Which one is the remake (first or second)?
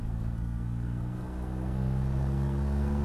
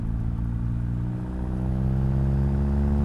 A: first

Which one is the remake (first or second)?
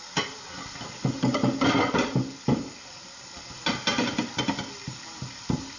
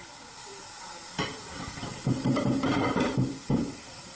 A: second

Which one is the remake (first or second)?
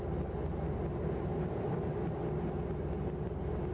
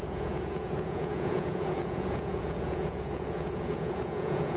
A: second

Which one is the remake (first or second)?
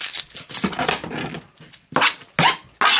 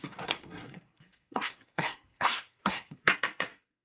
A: second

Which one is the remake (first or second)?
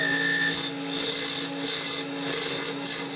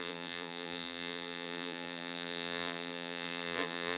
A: second